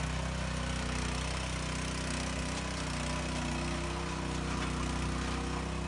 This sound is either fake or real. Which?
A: real